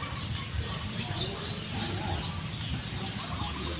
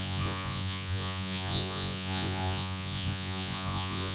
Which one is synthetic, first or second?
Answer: second